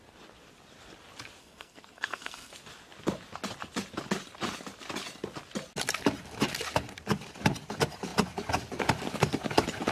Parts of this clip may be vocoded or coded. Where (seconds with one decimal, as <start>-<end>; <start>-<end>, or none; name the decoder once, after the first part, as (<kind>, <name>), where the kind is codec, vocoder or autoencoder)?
1.4-2.5 (codec, SNAC)